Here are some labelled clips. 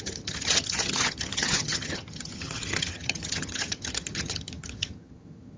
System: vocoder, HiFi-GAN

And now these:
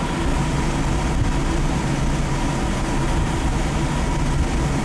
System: none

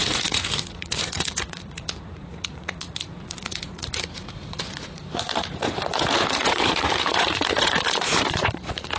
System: vocoder, Vocos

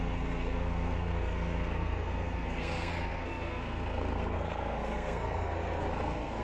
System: codec, SNAC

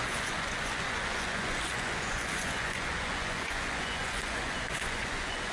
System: vocoder, Vocos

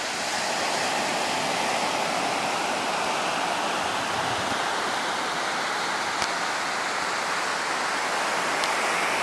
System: none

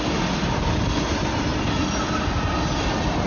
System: none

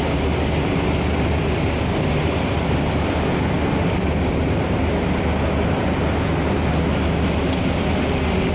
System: none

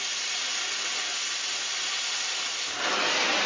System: none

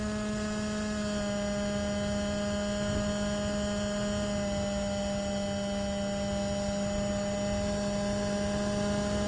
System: none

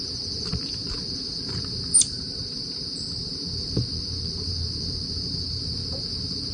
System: vocoder, BigVGAN v2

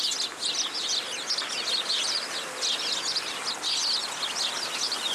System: none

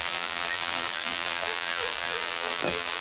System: vocoder, BigVGAN v2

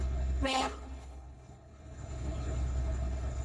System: codec, HILCodec